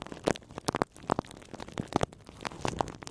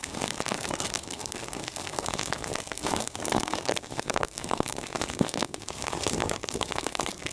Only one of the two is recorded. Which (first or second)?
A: first